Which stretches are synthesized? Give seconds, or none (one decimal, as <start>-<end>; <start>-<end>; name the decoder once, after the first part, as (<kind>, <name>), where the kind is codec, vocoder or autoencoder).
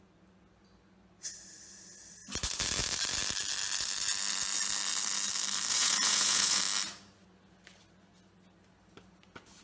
5.7-6.6 (vocoder, Vocos)